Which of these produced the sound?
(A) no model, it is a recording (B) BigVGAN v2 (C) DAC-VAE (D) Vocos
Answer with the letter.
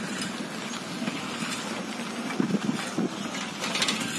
A